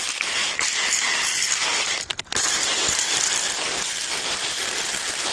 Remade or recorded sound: remade